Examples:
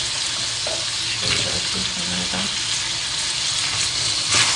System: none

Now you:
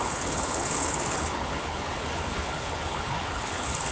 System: codec, HILCodec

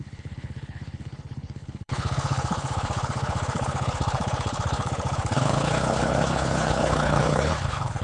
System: codec, HILCodec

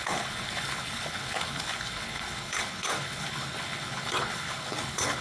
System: codec, HILCodec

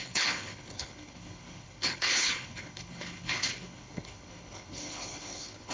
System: codec, HILCodec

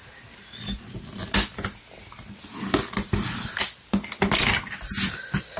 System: none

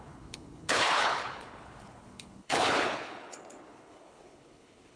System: codec, HILCodec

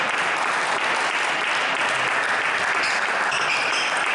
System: none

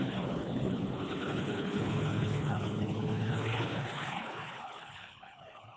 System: codec, HILCodec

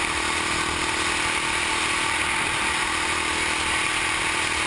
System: none